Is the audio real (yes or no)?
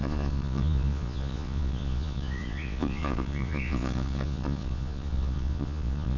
no